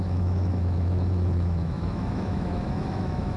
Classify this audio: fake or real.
fake